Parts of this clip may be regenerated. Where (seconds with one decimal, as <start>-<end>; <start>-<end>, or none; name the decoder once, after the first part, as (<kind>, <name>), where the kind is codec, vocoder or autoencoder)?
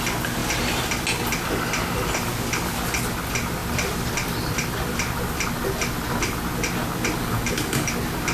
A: 7.2-7.9 (codec, DAC)